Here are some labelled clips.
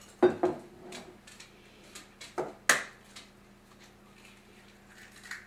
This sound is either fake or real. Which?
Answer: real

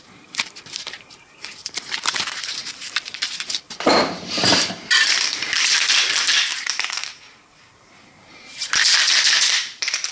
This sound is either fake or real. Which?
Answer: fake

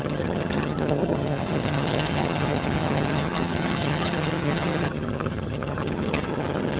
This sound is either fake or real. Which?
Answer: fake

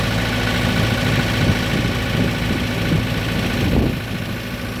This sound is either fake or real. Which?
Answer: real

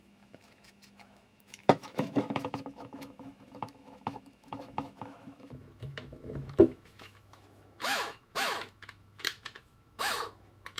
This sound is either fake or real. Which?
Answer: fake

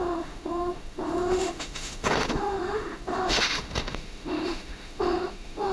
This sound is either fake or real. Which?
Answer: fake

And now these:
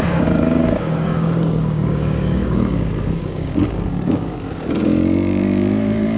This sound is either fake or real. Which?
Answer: fake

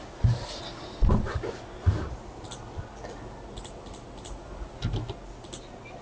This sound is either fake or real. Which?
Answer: real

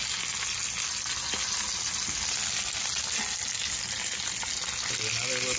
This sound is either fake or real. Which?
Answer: real